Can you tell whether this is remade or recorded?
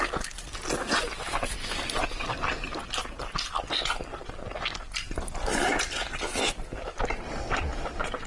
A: recorded